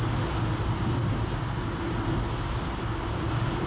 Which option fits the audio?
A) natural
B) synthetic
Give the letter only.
A